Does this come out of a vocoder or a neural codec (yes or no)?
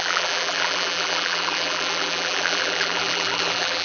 yes